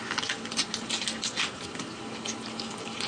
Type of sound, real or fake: real